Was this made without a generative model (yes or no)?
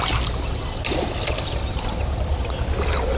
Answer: yes